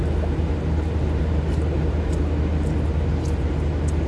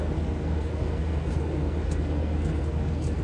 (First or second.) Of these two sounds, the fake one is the second